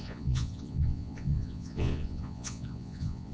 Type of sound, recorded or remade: remade